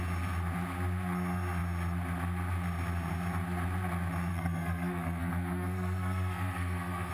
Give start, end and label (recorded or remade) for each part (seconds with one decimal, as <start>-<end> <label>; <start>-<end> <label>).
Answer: 0.0-4.3 recorded; 4.3-7.1 remade